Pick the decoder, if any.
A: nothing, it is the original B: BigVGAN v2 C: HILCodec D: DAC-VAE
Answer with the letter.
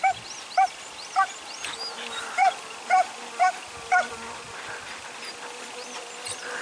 A